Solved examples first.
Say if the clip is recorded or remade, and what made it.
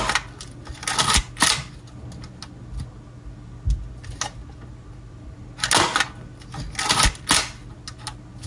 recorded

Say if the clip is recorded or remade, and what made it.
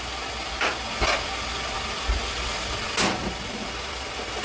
recorded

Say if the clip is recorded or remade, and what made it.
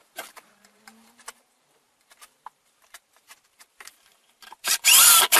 remade, vocoder, BigVGAN v2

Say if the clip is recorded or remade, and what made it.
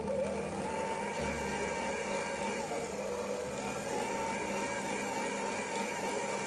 recorded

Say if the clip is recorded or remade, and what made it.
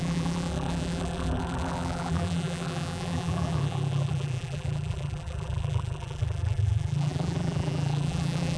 remade, vocoder, BigVGAN v2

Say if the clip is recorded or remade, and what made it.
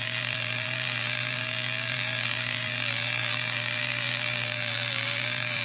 remade, vocoder, BigVGAN v2